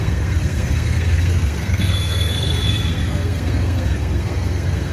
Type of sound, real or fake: fake